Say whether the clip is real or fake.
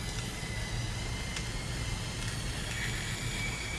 real